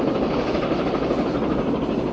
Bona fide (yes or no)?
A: yes